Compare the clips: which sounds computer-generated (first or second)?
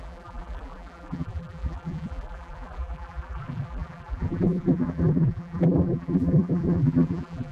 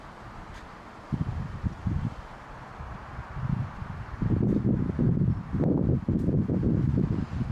first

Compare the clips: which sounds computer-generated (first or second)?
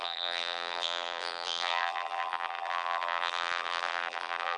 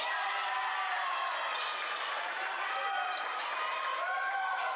first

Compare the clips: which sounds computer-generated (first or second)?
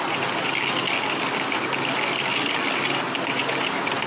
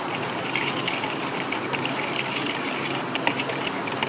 second